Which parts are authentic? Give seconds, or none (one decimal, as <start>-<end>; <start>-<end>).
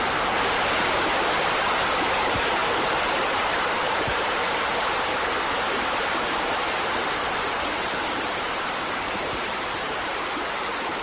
none